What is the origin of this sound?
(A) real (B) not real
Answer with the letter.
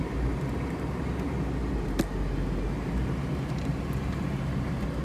A